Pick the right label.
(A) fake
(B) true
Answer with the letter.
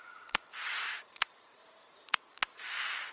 A